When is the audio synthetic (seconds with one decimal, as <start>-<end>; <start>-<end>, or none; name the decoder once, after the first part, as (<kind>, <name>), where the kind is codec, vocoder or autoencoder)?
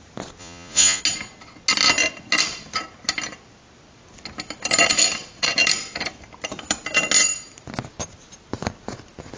0.4-1.0 (vocoder, Vocos)